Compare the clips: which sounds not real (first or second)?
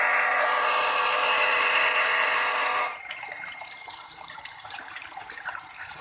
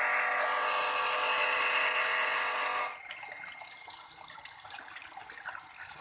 first